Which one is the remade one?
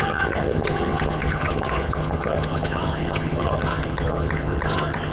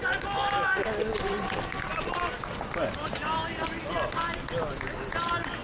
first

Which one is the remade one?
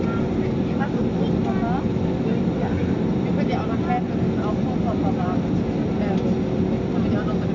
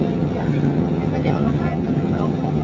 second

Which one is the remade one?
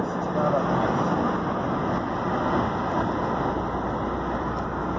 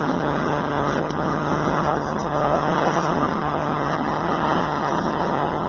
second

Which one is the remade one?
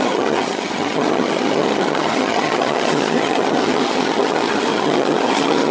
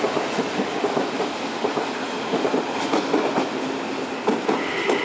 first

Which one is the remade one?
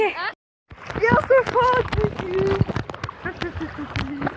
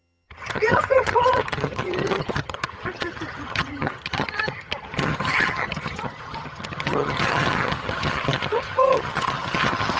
second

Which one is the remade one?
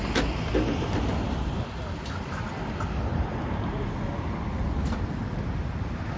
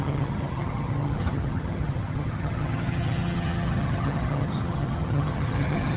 second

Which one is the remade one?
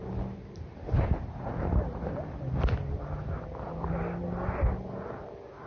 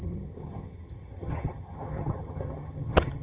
second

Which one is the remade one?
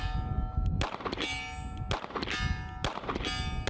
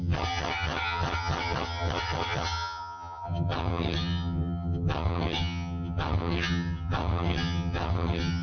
second